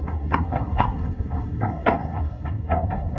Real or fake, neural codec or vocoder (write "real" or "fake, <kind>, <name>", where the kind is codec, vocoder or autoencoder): fake, codec, SNAC